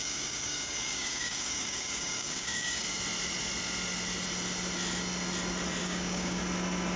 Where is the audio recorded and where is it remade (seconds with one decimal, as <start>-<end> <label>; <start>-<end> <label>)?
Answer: 0.0-3.0 remade; 3.0-5.8 recorded; 5.8-6.4 remade; 6.4-7.0 recorded